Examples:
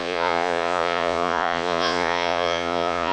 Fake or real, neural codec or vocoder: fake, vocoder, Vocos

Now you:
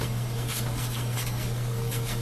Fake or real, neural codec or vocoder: fake, codec, SNAC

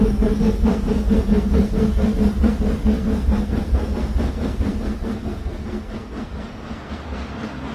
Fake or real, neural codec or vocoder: fake, codec, SNAC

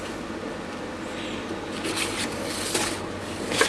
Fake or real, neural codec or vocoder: real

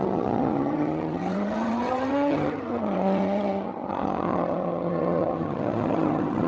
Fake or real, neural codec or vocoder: fake, vocoder, HiFi-GAN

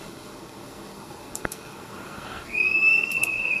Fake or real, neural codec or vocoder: fake, codec, SNAC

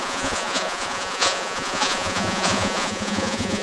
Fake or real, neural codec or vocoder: fake, vocoder, Vocos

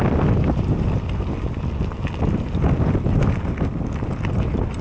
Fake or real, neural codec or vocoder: real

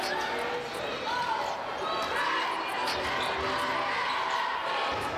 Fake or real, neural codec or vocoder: real